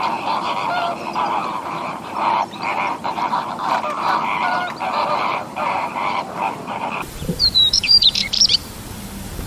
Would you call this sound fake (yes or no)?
yes